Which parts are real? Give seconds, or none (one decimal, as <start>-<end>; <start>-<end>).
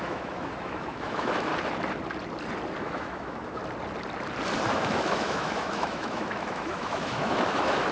1.5-2.8; 3.6-4.7